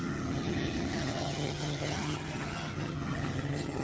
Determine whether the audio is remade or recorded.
remade